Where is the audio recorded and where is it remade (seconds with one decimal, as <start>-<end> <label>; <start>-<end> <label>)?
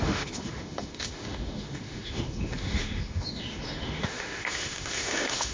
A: 0.0-5.5 remade